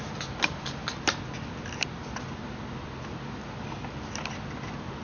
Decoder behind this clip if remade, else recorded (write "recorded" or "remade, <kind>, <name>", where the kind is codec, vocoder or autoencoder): recorded